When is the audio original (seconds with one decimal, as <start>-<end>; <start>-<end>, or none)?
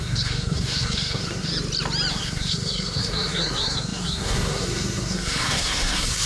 1.5-2.1